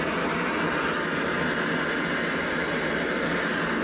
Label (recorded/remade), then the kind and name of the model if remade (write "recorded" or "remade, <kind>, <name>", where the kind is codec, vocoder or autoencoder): recorded